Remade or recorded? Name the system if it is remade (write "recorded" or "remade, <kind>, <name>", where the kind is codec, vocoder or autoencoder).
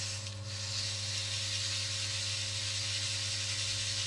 recorded